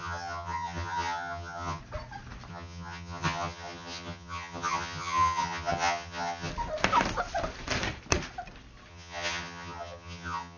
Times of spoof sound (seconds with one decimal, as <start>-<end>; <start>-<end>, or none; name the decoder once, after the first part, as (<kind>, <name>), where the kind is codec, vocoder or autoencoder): 0.0-1.8 (vocoder, HiFi-GAN); 2.5-6.5; 8.9-10.6